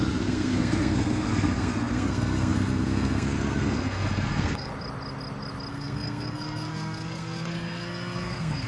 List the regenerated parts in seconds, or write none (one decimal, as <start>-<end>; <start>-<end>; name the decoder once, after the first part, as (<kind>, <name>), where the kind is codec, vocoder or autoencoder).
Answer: 0.0-4.7 (codec, SNAC); 5.7-8.7